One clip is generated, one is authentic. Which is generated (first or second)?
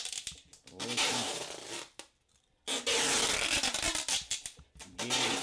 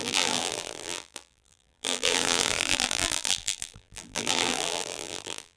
second